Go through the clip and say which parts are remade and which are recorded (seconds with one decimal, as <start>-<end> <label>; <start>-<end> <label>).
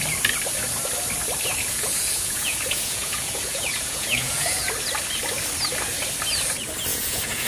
0.0-1.5 recorded; 1.5-4.7 remade; 4.7-6.9 recorded; 6.9-7.5 remade